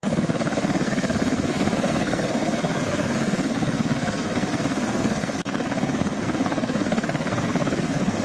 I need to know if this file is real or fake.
fake